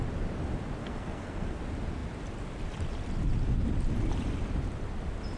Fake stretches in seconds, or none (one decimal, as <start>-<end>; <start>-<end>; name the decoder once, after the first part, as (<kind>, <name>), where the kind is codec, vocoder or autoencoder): 0.8-1.6 (codec, SNAC)